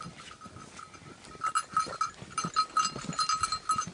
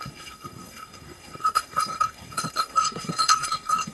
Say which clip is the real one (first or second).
first